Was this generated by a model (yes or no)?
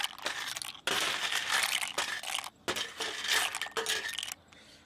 no